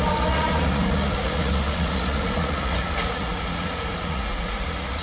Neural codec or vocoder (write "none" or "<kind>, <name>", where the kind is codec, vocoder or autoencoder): vocoder, Vocos